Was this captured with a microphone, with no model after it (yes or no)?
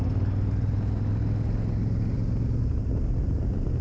yes